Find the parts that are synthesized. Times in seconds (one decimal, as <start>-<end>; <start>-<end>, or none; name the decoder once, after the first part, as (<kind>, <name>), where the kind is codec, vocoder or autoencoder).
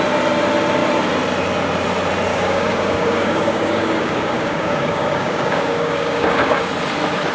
2.3-6.7 (codec, DAC)